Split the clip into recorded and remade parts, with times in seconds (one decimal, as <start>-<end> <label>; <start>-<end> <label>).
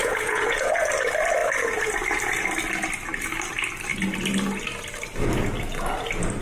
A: 0.0-0.9 remade; 0.9-6.4 recorded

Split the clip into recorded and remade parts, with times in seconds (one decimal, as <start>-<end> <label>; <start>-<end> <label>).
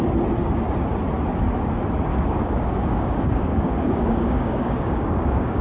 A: 0.0-2.1 recorded; 2.1-5.6 remade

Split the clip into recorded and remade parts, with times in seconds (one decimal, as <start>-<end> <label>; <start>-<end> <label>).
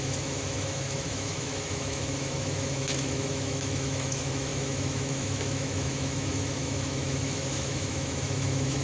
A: 0.0-8.8 remade